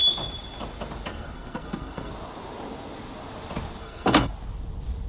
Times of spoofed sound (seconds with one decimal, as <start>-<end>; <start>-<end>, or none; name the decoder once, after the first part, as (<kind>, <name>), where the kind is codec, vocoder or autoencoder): 1.1-2.1 (codec, SNAC); 3.8-4.3